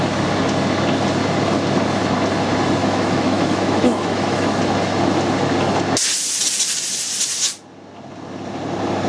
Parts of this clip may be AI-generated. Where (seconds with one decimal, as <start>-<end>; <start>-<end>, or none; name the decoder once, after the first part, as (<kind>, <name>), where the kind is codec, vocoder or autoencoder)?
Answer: 2.8-4.6 (autoencoder, DAC-VAE)